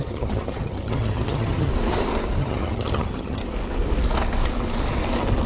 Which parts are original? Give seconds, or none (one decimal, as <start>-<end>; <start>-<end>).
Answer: 1.7-2.4; 3.4-5.5